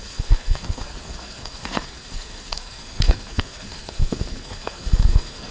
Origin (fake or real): fake